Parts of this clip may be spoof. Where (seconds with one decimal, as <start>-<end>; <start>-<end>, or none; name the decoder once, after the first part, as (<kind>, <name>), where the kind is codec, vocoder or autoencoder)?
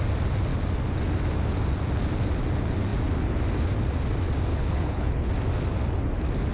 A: 4.5-5.3 (codec, HILCodec)